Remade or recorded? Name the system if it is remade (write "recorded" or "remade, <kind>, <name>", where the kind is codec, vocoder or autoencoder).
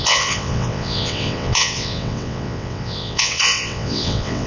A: remade, vocoder, WaveNeXt